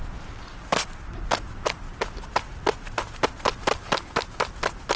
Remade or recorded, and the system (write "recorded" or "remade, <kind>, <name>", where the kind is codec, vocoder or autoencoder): recorded